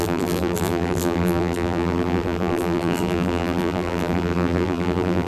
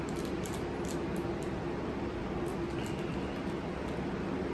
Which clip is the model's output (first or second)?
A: first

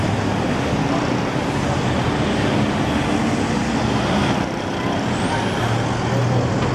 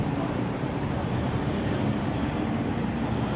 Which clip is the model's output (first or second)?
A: second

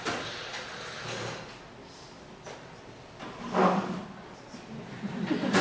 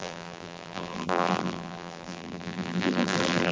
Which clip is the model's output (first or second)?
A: second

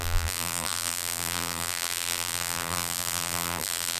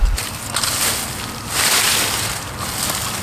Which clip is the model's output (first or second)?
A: first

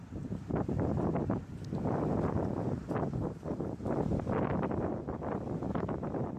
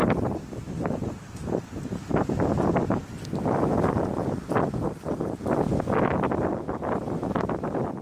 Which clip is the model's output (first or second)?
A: first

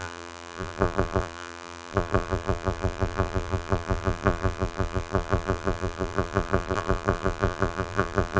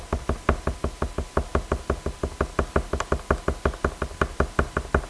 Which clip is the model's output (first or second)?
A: first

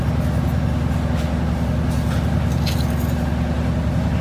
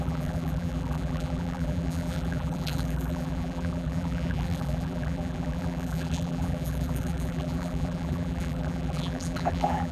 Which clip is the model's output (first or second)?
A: second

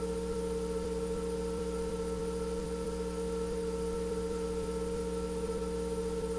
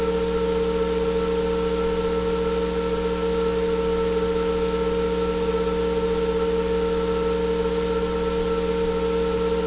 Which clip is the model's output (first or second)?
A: first